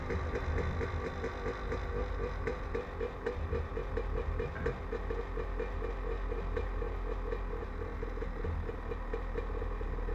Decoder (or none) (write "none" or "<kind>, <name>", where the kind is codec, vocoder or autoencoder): none